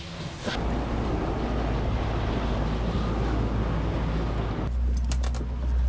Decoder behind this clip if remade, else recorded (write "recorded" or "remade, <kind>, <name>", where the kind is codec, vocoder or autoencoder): recorded